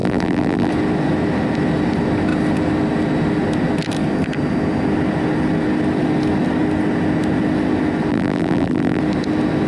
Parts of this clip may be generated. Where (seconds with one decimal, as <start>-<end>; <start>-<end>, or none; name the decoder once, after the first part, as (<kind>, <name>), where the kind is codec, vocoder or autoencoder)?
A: 0.0-0.7 (vocoder, BigVGAN v2); 8.1-9.0